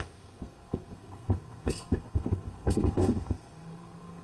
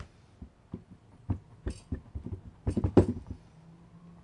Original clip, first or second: second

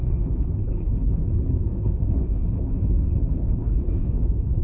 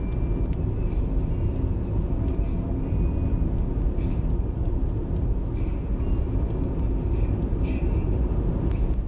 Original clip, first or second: second